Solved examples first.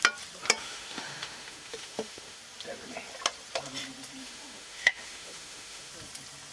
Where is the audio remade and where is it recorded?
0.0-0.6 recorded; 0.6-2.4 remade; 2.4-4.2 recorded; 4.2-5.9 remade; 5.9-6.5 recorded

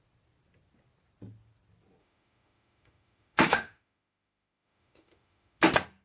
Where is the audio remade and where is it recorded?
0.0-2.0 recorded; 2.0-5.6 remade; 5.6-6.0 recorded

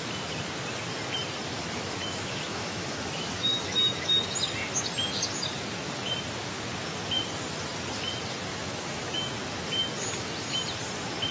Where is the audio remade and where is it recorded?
0.0-1.6 recorded; 1.6-4.2 remade; 4.2-8.5 recorded; 8.5-9.3 remade; 9.3-11.3 recorded

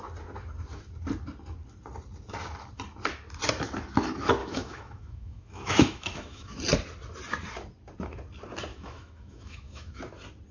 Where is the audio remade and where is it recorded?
0.0-4.4 recorded; 4.4-6.6 remade; 6.6-8.7 recorded; 8.7-10.0 remade; 10.0-10.5 recorded

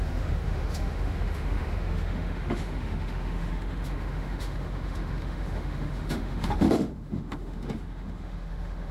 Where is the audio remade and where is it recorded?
0.0-8.9 remade